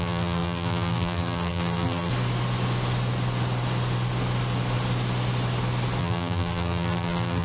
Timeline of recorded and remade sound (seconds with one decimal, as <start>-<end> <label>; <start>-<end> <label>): 0.0-2.1 remade; 2.1-6.0 recorded; 6.0-7.4 remade